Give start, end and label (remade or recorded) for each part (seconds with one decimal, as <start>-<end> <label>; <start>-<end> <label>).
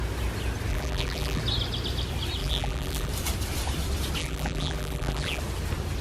0.0-0.7 recorded; 0.7-1.4 remade; 1.4-2.4 recorded; 2.4-3.1 remade; 3.1-4.2 recorded; 4.2-5.4 remade; 5.4-6.0 recorded